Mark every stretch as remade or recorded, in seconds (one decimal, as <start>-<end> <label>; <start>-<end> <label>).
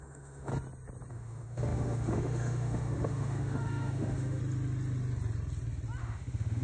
0.0-0.5 remade; 0.5-1.1 recorded; 1.1-4.4 remade; 4.4-6.0 recorded; 6.0-6.6 remade